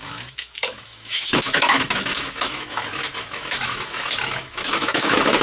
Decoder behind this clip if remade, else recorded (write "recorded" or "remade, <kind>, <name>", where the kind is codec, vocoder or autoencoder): remade, autoencoder, DAC-VAE